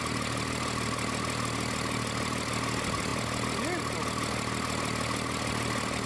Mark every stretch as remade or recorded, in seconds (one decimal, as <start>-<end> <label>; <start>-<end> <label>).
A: 0.0-6.1 recorded